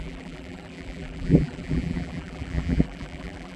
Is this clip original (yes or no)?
no